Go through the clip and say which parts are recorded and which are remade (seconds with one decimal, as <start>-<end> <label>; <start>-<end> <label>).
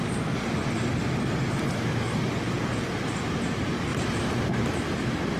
0.0-3.2 recorded; 3.2-5.4 remade